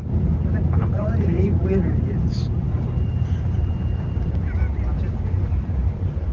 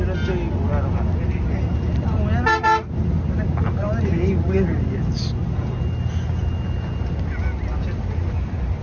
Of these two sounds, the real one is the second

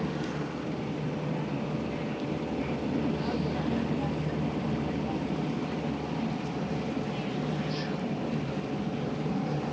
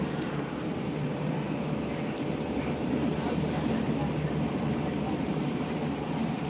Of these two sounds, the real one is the first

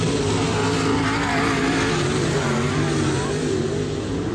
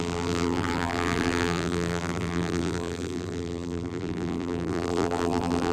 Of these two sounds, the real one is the first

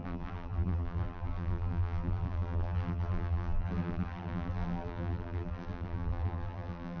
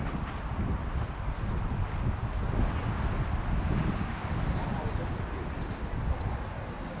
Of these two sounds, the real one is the second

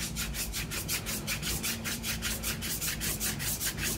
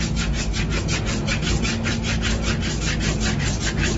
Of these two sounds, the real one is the second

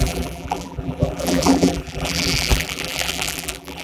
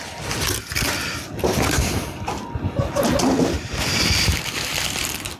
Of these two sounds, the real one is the second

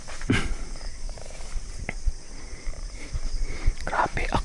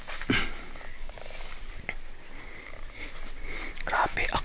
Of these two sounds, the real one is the second